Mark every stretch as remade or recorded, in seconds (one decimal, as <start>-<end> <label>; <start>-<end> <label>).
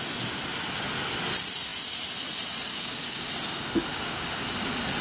0.0-2.7 recorded; 2.7-3.3 remade; 3.3-3.9 recorded; 3.9-4.4 remade; 4.4-5.0 recorded